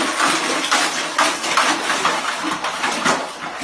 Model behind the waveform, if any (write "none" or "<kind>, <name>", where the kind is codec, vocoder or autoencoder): vocoder, BigVGAN v2